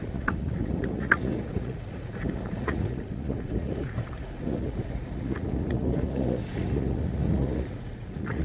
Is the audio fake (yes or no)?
yes